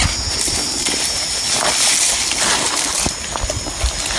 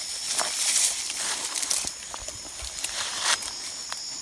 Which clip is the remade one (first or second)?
second